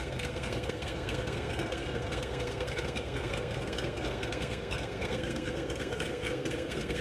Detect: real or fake fake